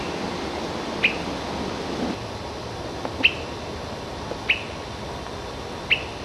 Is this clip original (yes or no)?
yes